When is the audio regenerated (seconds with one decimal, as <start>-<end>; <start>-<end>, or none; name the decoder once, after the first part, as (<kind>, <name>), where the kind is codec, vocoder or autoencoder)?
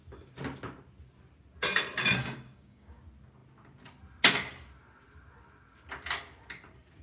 2.2-3.0 (codec, DAC)